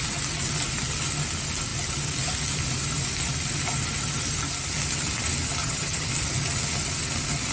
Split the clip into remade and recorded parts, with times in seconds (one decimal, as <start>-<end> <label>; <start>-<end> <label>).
0.0-5.6 recorded; 5.6-6.1 remade; 6.1-7.5 recorded